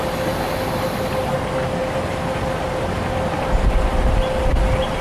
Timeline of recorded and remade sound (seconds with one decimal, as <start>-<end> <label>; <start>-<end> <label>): 0.0-5.0 recorded